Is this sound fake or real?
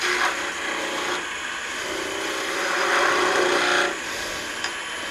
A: real